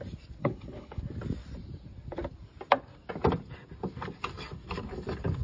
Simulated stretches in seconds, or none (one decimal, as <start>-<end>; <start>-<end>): 0.4-1.0